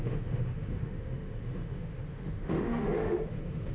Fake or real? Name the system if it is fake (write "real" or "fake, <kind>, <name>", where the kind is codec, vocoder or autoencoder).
fake, autoencoder, DAC-VAE